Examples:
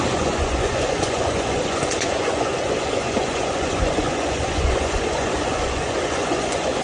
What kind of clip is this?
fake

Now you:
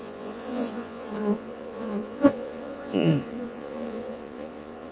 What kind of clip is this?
fake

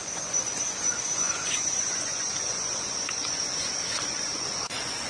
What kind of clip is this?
fake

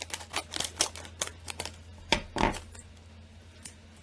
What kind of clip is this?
real